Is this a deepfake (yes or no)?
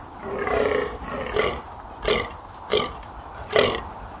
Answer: no